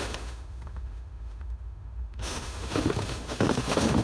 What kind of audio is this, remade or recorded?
remade